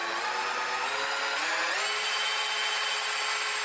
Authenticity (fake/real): real